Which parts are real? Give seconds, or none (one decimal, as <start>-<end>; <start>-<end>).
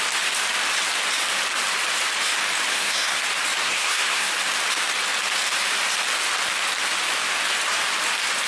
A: 0.0-2.7; 3.2-3.6; 4.3-8.5